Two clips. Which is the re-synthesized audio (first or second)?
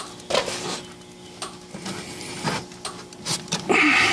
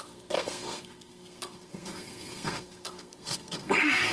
second